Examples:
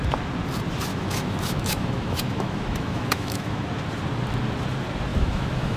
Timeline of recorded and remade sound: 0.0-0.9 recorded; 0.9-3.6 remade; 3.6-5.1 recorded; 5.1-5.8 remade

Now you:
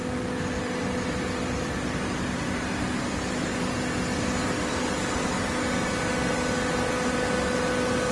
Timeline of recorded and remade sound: 0.0-8.1 recorded